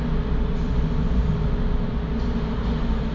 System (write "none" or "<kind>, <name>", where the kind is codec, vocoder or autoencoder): none